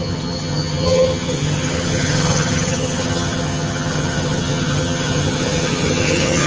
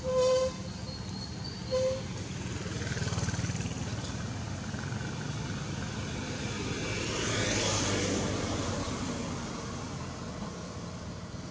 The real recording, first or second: second